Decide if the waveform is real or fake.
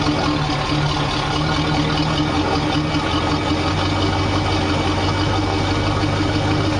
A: real